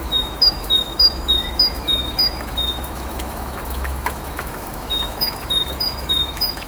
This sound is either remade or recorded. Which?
remade